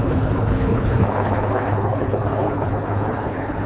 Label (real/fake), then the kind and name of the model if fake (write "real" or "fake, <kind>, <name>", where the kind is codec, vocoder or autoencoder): fake, codec, HILCodec